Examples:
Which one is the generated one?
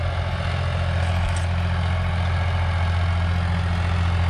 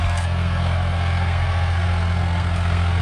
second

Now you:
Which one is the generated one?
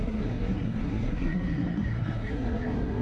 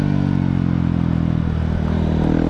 first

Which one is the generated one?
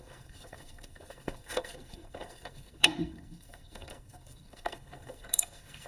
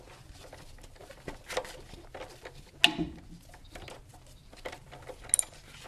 first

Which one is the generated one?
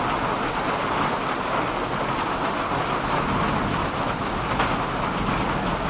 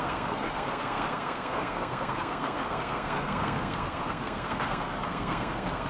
second